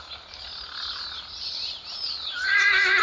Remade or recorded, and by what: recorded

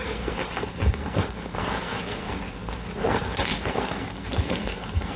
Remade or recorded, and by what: remade, codec, SNAC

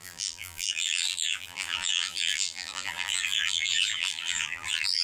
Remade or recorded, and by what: remade, vocoder, BigVGAN v2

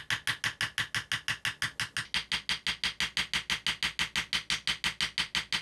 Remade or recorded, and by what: recorded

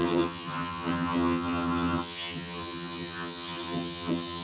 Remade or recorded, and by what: remade, vocoder, HiFi-GAN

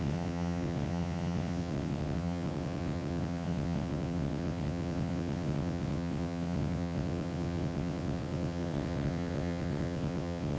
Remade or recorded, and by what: remade, vocoder, WaveNeXt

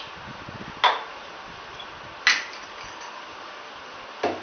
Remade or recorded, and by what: recorded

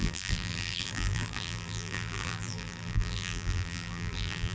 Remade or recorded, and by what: remade, vocoder, BigVGAN v2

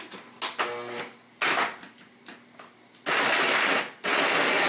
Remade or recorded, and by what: recorded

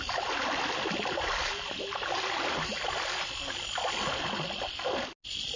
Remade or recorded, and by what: recorded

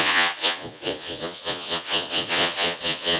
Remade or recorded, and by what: remade, vocoder, Vocos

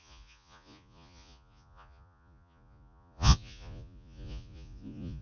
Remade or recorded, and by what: remade, vocoder, Vocos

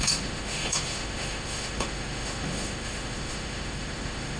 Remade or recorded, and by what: remade, autoencoder, DAC-VAE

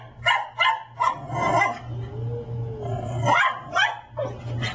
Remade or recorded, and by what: recorded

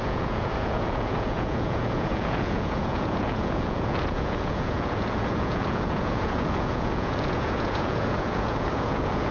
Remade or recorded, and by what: remade, vocoder, Vocos